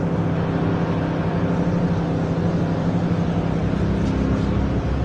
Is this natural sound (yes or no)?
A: yes